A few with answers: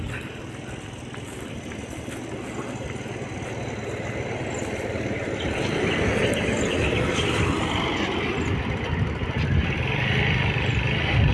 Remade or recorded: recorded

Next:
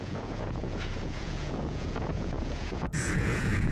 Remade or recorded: remade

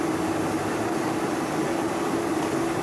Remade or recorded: recorded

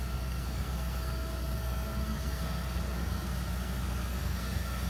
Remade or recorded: remade